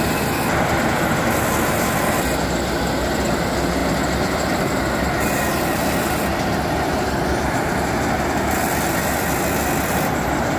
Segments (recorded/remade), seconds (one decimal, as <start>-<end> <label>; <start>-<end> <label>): 0.0-10.6 recorded